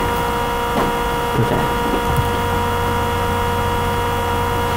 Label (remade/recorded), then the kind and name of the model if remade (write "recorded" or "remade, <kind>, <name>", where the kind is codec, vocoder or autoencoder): recorded